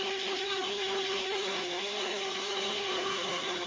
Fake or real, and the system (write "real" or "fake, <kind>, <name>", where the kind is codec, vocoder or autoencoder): fake, codec, SNAC